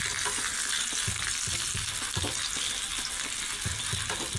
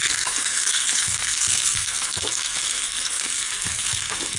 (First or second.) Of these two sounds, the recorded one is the first